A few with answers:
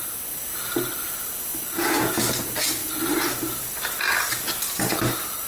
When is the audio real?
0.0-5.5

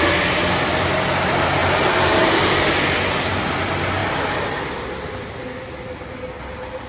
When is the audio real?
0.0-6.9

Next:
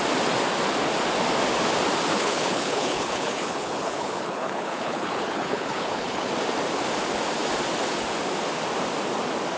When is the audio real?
0.0-2.1; 6.3-9.6